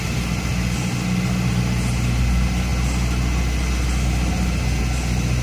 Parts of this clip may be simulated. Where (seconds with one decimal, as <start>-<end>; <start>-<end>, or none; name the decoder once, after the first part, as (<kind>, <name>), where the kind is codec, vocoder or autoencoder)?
none